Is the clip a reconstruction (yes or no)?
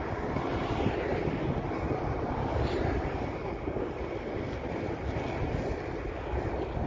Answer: no